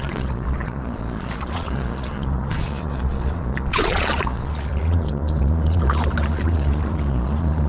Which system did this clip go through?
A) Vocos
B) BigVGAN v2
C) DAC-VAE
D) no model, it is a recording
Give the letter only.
A